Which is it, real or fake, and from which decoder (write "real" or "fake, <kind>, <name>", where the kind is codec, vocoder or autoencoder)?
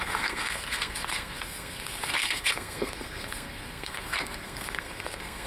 fake, codec, SNAC